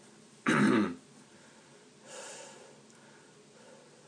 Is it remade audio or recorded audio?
recorded